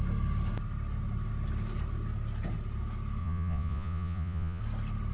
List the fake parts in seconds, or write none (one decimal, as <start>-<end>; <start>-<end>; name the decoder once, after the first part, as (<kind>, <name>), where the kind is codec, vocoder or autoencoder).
3.2-4.6 (vocoder, Vocos)